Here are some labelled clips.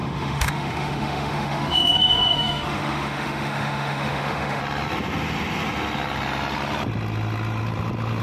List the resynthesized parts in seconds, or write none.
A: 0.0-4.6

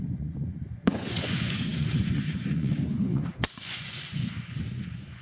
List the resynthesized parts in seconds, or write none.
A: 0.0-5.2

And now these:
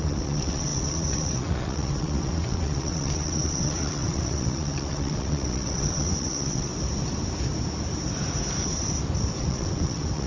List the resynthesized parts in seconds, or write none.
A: 0.0-6.7; 9.4-10.3

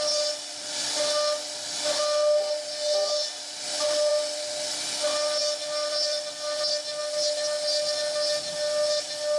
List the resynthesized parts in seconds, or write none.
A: none

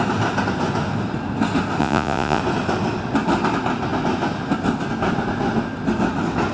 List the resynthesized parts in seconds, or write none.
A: 1.8-2.4

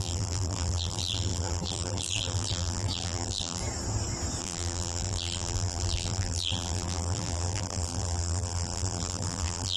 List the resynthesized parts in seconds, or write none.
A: 0.0-3.6; 4.4-9.8

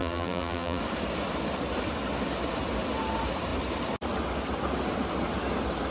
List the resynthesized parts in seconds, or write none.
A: 0.0-0.8

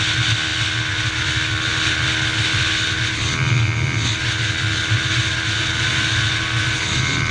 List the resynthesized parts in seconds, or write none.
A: none